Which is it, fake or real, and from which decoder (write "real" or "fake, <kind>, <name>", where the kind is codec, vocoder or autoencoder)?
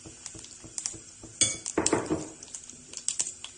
real